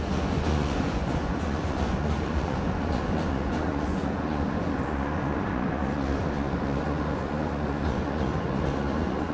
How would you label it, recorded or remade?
remade